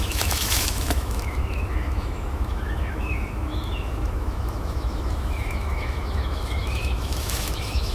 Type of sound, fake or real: fake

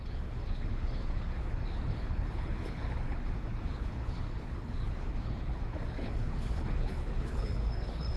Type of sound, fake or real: fake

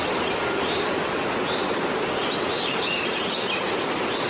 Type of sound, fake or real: real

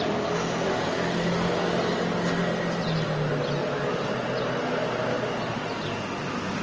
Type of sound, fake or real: real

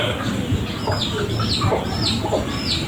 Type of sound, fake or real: real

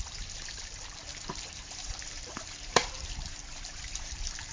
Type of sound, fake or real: fake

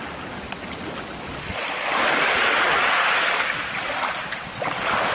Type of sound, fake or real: real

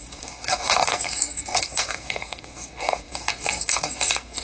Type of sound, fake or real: fake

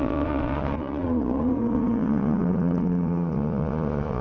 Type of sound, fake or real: fake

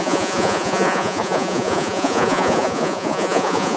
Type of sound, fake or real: fake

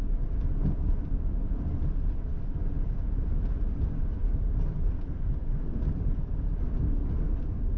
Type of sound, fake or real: real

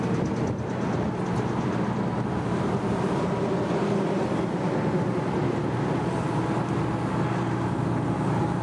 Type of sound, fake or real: real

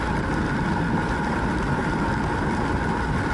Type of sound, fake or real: real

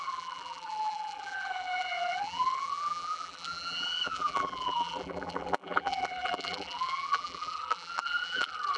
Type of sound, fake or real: fake